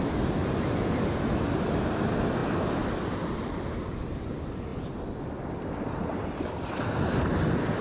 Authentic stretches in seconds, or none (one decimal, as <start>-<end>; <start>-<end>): 0.0-7.8